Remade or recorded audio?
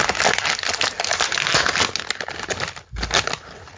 recorded